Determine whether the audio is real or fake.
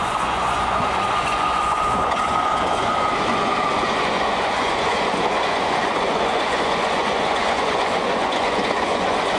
fake